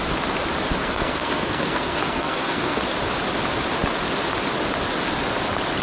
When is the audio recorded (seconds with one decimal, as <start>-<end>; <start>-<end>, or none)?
0.0-0.8; 2.8-5.8